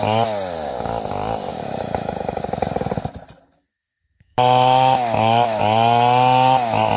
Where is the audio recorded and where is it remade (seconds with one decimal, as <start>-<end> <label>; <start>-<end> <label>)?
0.0-1.5 recorded; 1.5-2.4 remade; 2.4-3.7 recorded; 3.7-5.6 remade; 5.6-7.0 recorded